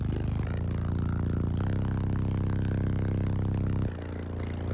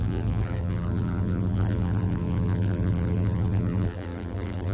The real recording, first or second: first